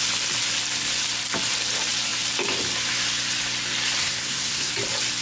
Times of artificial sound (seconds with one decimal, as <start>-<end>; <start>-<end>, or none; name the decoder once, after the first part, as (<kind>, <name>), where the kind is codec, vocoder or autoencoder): 4.0-4.7 (codec, SNAC)